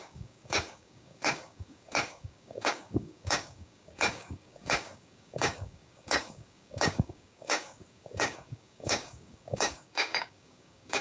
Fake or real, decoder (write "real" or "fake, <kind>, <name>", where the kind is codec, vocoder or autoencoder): fake, codec, DAC